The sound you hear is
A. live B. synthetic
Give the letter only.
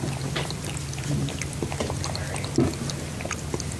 A